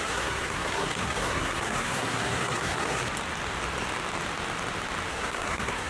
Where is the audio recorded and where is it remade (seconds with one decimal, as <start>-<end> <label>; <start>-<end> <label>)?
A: 0.0-3.0 remade; 3.0-5.1 recorded; 5.1-5.9 remade